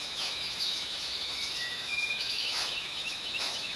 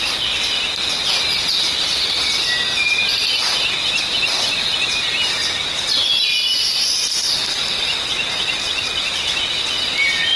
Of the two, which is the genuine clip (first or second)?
second